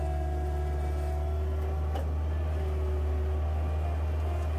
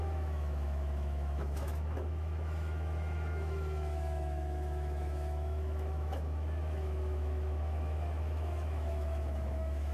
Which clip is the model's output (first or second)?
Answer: second